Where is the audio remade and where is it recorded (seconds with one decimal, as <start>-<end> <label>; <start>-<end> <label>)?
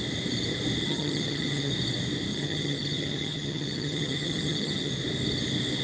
0.0-0.8 recorded; 0.8-1.7 remade; 1.7-2.3 recorded; 2.3-4.9 remade; 4.9-5.8 recorded